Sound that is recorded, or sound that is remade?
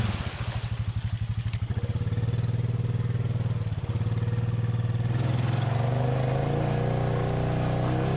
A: recorded